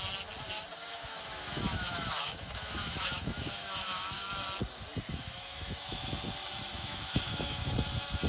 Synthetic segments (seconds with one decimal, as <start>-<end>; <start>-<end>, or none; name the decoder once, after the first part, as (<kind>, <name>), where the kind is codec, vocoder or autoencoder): 0.7-4.3 (autoencoder, DAC-VAE); 5.1-6.1; 6.7-7.7